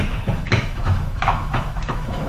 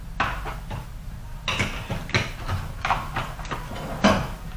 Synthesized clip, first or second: first